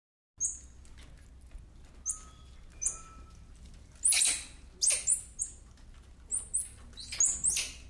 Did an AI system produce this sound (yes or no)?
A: no